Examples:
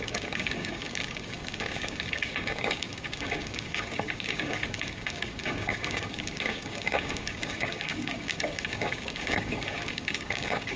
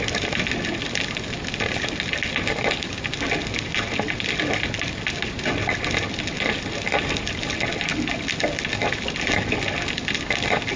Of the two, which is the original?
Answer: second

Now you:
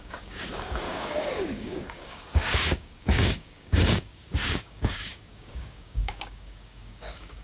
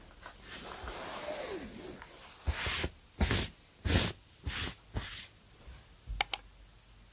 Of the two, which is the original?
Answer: second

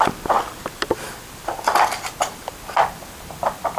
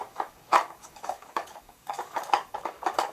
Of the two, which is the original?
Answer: first